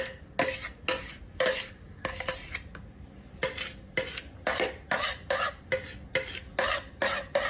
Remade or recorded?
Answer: recorded